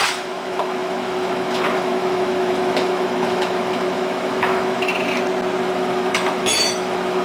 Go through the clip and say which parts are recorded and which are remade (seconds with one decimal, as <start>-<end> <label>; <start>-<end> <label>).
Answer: 0.0-4.9 remade; 4.9-5.6 recorded; 5.6-7.2 remade